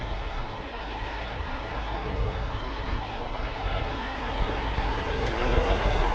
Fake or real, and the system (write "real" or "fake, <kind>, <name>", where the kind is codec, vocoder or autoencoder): fake, codec, SNAC